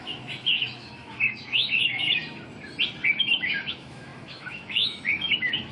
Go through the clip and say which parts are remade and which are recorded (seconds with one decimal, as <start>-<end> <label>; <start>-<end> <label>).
0.0-2.2 remade; 2.2-3.1 recorded; 3.1-5.7 remade